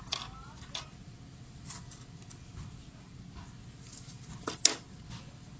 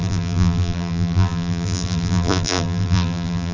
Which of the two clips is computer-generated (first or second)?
second